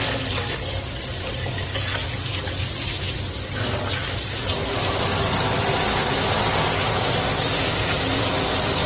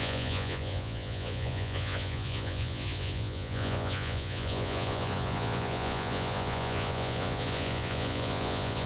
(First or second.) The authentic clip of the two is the first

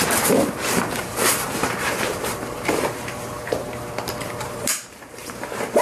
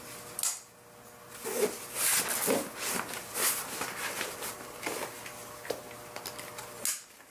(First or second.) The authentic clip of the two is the second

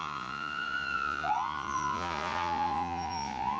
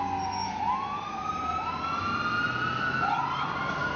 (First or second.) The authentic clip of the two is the second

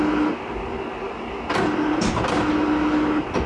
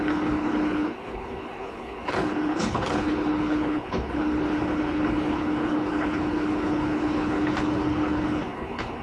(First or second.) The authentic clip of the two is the first